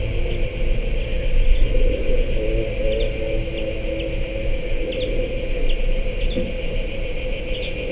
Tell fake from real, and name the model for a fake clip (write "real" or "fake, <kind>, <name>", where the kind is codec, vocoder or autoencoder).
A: real